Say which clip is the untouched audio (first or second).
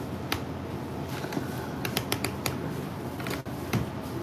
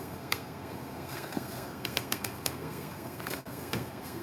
first